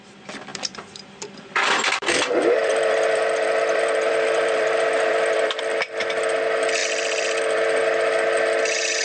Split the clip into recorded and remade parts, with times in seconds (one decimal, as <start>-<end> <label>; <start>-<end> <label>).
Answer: 0.0-0.5 recorded; 0.5-5.6 remade; 5.6-6.8 recorded; 6.8-7.8 remade; 7.8-9.0 recorded